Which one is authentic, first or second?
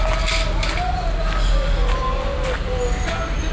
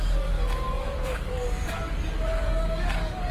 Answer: first